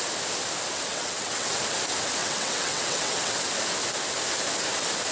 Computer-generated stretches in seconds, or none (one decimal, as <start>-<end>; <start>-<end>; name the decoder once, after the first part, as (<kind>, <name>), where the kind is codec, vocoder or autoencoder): 0.9-1.6 (vocoder, WaveNeXt); 2.2-3.4